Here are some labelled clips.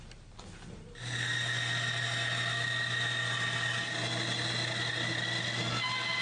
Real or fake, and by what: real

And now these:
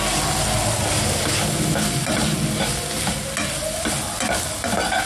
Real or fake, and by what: real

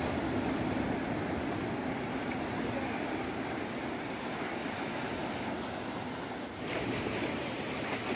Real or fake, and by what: real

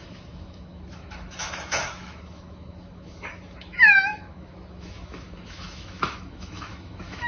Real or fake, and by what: fake, autoencoder, DAC-VAE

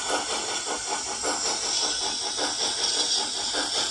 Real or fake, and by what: real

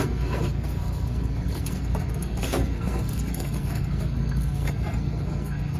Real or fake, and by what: fake, codec, SNAC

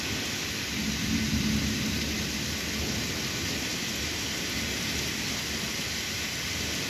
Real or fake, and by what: real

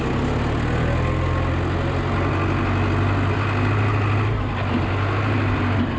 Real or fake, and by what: real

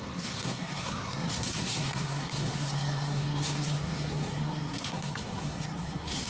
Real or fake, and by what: fake, codec, SNAC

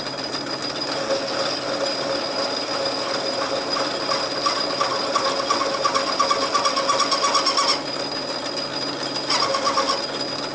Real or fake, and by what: real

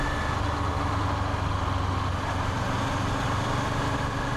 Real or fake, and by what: real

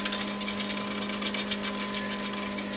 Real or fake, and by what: real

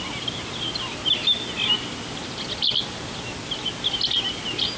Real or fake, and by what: real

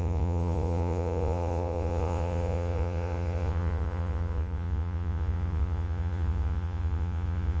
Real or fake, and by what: fake, vocoder, Vocos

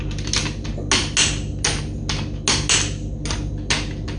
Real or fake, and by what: real